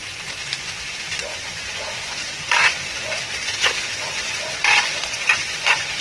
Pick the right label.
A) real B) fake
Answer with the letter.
B